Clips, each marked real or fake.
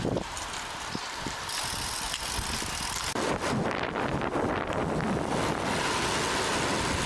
real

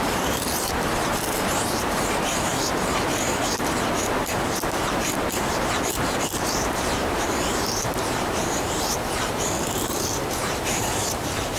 fake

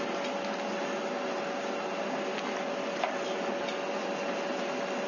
real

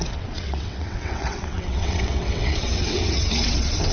fake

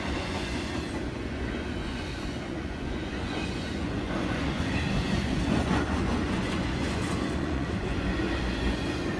fake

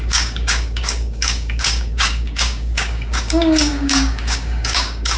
fake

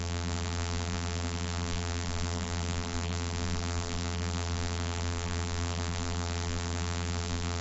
fake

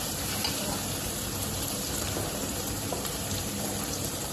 fake